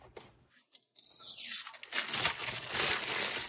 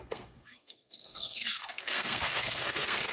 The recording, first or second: first